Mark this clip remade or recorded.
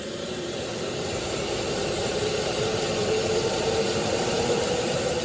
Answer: remade